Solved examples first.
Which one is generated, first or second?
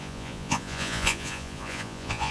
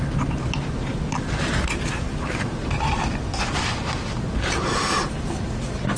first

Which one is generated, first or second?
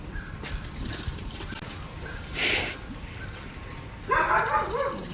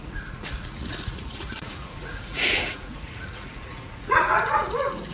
second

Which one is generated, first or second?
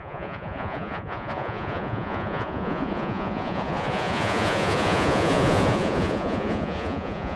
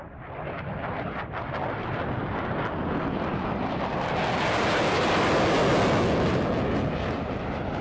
first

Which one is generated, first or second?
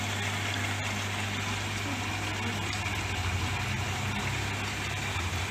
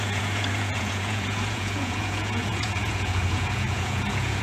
second